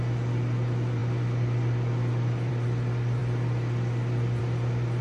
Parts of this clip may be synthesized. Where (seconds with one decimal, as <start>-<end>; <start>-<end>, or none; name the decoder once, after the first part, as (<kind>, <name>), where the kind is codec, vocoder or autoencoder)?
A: none